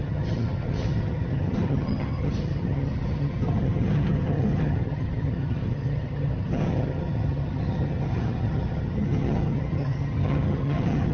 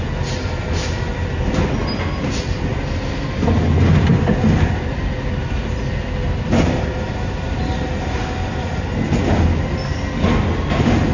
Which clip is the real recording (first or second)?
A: second